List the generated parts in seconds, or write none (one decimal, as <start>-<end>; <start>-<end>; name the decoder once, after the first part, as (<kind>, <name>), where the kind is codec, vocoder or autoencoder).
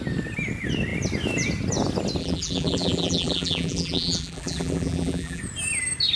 2.2-5.4 (vocoder, BigVGAN v2)